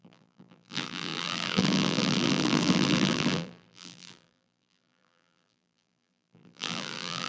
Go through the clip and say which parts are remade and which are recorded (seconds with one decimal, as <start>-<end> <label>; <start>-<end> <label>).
0.0-7.3 remade